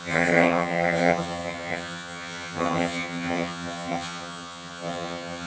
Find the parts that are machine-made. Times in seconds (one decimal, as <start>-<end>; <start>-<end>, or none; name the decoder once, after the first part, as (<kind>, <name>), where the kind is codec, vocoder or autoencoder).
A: 0.0-5.5 (vocoder, HiFi-GAN)